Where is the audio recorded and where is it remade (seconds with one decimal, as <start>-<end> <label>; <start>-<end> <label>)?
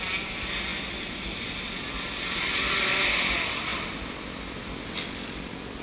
0.0-5.8 recorded